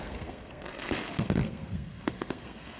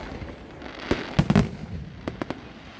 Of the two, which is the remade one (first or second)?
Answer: first